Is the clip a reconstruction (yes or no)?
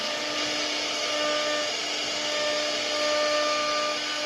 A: no